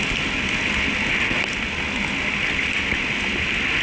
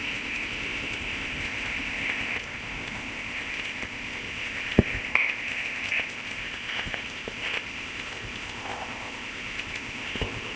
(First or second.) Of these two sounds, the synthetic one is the second